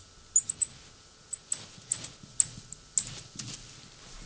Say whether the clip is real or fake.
real